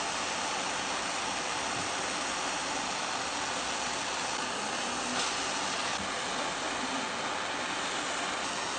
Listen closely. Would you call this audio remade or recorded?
recorded